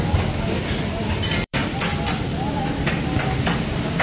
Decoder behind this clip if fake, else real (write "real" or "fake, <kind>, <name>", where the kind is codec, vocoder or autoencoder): fake, vocoder, BigVGAN v2